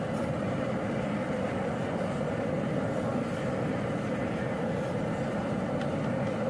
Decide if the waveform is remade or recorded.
recorded